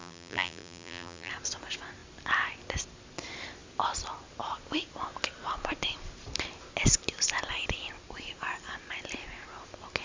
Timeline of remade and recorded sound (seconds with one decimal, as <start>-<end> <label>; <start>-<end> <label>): 0.0-1.3 remade; 1.3-10.0 recorded